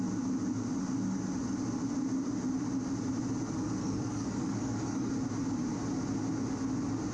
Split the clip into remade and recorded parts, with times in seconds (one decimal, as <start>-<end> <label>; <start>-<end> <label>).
0.0-3.8 recorded; 3.8-5.1 remade; 5.1-7.1 recorded